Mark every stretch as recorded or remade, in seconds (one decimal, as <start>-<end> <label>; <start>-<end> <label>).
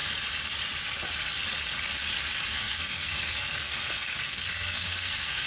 0.0-2.5 recorded; 2.5-5.5 remade